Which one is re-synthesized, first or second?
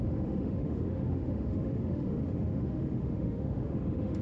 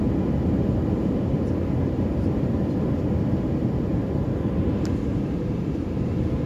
first